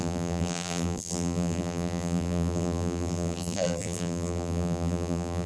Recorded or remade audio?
remade